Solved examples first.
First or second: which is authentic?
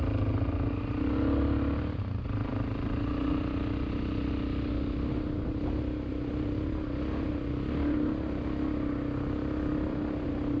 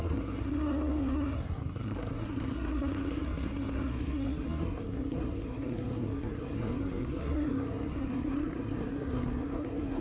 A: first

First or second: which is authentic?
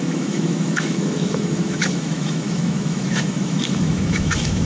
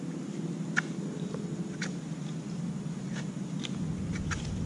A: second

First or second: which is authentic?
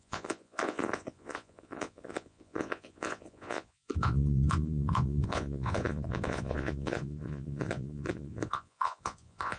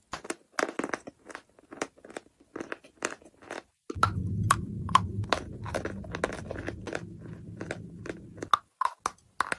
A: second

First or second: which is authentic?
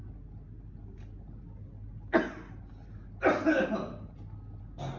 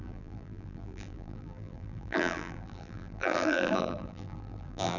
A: first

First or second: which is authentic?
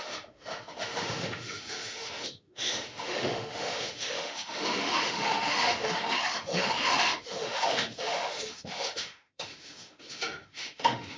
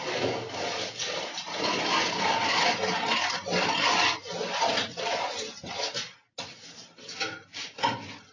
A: second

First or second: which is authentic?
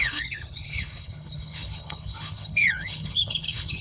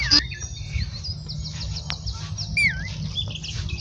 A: second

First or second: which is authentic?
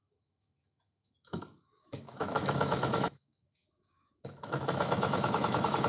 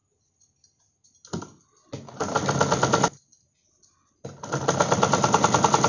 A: second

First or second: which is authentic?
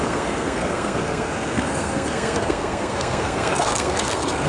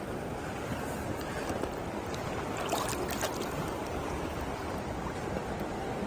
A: second